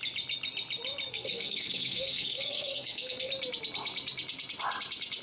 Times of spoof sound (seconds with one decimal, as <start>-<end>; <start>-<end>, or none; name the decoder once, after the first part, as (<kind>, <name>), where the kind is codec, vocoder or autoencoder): 1.1-3.3 (codec, SNAC)

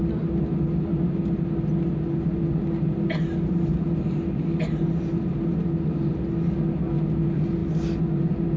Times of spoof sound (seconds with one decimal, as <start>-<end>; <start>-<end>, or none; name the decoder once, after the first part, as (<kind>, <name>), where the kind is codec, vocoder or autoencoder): none

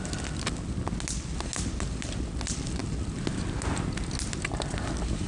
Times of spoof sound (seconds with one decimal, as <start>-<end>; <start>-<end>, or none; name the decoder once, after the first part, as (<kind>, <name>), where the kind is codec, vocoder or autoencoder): none

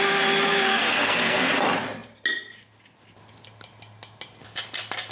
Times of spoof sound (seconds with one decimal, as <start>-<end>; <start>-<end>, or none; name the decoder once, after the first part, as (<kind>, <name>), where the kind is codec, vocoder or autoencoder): 0.7-1.5 (codec, SNAC)

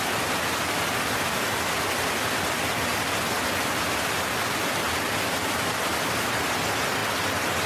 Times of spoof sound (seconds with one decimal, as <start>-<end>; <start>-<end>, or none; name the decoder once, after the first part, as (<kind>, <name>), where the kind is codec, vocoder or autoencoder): none

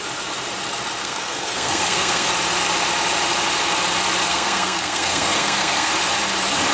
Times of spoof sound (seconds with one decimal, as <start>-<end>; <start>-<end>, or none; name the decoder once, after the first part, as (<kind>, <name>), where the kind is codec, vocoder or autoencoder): 1.0-2.3 (codec, SNAC); 4.3-5.9